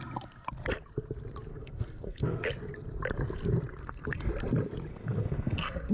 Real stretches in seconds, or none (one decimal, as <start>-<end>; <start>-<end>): 0.0-1.5; 2.4-3.8; 4.3-4.9